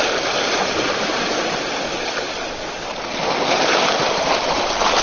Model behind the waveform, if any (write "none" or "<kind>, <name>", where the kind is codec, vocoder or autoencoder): none